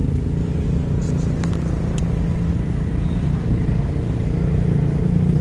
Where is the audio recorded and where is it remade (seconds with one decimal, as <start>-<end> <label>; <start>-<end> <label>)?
0.0-5.4 recorded